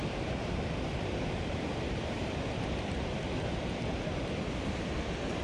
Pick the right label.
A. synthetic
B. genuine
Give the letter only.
A